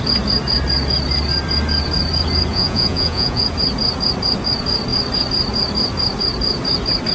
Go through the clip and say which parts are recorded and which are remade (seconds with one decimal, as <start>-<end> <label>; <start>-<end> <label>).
0.0-2.5 recorded; 2.5-3.4 remade; 3.4-7.1 recorded